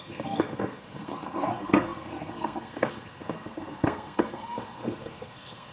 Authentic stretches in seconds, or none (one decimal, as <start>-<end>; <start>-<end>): none